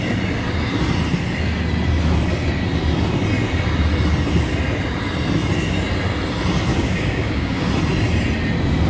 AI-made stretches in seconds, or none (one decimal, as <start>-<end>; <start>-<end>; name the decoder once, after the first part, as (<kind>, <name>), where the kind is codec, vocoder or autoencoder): 6.7-7.7 (codec, DAC)